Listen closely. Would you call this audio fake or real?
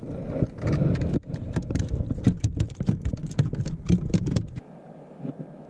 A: real